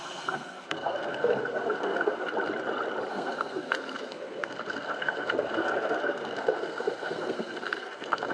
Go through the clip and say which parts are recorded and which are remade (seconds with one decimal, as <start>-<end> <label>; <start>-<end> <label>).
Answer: 0.0-2.3 remade; 2.3-3.1 recorded; 3.1-8.3 remade